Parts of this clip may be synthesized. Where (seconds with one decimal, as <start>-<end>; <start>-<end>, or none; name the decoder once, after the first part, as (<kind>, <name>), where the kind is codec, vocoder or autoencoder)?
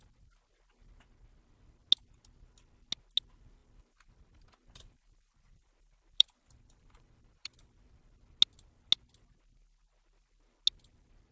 3.6-8.1 (vocoder, BigVGAN v2)